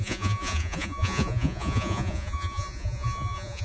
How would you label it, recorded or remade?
remade